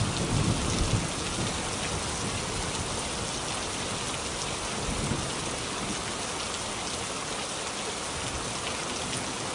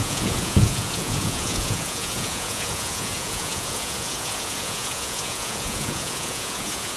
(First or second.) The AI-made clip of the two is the second